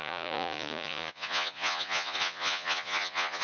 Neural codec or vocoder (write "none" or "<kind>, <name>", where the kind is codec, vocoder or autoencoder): vocoder, Vocos